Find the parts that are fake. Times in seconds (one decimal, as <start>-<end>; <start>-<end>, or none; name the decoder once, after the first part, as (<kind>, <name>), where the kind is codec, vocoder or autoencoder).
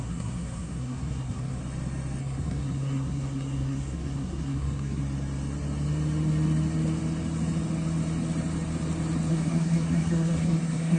0.0-1.6 (codec, SNAC); 2.2-5.0; 9.3-11.0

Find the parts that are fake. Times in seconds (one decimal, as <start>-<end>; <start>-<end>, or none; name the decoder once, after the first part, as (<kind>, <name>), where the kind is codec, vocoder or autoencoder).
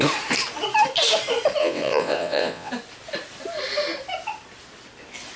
1.6-2.7 (vocoder, WaveNeXt)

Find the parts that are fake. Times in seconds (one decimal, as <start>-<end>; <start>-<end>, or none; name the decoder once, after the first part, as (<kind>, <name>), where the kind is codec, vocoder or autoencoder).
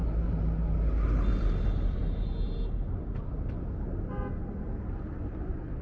1.3-2.0 (vocoder, BigVGAN v2); 4.5-5.8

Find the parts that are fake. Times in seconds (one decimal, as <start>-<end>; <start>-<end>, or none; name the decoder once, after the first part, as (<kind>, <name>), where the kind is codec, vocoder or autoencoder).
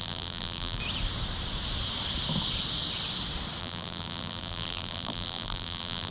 0.0-0.8 (vocoder, BigVGAN v2); 3.6-6.1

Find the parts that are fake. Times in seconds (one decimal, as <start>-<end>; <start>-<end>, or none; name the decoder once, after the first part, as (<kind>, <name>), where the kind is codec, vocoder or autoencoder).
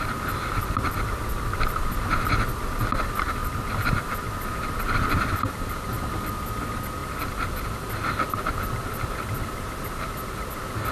3.4-4.6 (vocoder, BigVGAN v2)